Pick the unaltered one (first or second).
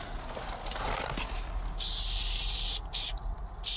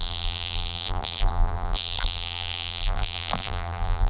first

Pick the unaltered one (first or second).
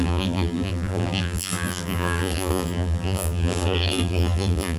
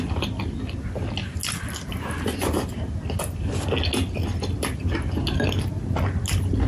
second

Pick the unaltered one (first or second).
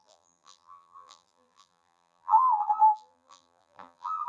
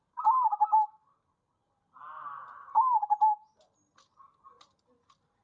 second